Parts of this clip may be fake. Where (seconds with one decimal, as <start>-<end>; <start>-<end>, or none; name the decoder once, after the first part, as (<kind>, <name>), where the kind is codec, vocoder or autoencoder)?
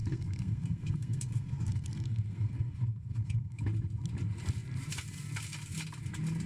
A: 0.0-3.6 (codec, SNAC)